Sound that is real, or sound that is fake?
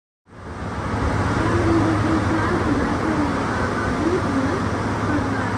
real